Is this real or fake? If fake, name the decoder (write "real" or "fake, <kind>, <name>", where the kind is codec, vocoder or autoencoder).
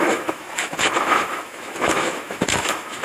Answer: fake, autoencoder, DAC-VAE